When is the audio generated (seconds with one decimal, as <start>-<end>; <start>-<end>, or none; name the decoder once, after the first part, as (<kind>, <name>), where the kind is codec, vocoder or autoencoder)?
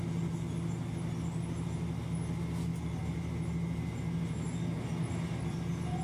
none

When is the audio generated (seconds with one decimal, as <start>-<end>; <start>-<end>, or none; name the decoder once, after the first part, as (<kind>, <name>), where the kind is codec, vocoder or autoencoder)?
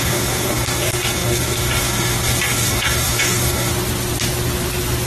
0.0-3.7 (codec, DAC)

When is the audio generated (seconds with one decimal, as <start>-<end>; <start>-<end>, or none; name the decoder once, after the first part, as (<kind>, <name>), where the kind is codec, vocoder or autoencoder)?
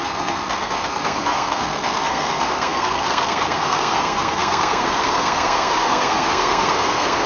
0.0-7.3 (codec, SNAC)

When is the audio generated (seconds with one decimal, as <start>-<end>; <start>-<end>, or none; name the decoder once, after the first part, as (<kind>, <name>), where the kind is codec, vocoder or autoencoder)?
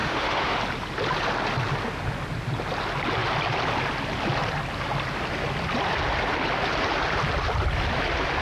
0.0-0.6 (autoencoder, DAC-VAE)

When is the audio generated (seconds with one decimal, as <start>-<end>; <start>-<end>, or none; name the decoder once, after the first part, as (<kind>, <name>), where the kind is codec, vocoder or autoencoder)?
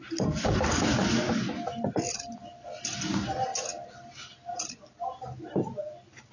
none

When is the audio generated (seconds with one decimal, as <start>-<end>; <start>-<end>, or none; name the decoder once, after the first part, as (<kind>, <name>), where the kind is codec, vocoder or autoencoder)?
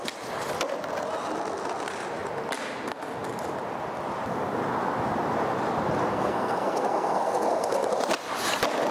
6.1-7.9 (codec, SNAC)